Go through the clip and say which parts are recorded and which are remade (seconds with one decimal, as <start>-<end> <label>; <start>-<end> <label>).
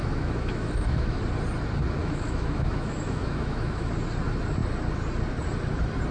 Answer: 0.0-1.2 remade; 1.2-2.0 recorded; 2.0-3.9 remade; 3.9-6.1 recorded